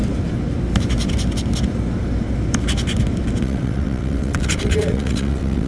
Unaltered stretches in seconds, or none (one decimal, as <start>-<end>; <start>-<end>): 0.0-3.4